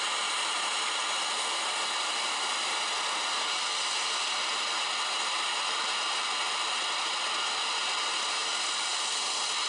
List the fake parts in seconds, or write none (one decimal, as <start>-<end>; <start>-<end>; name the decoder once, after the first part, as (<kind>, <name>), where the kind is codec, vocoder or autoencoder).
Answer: 8.4-9.1 (vocoder, BigVGAN v2)